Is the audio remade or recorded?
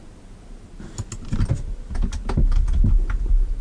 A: recorded